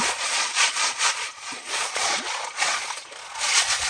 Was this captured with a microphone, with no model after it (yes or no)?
no